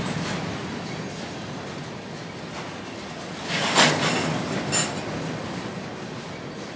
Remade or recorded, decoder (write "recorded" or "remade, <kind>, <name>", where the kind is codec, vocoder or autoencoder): recorded